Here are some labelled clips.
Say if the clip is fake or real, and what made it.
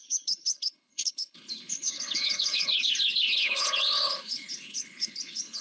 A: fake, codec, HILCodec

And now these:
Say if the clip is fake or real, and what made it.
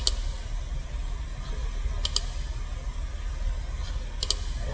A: real